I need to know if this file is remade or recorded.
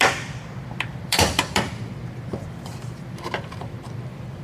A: remade